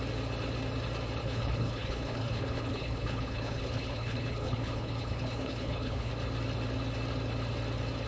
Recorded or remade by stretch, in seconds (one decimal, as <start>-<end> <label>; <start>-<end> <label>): 0.0-1.2 recorded; 1.2-6.1 remade; 6.1-8.1 recorded